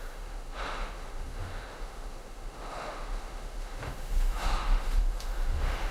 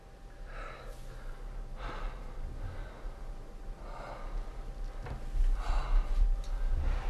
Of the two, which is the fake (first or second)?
first